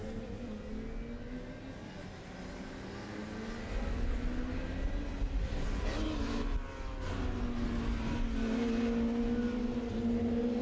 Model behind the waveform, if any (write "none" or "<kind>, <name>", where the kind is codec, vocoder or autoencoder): none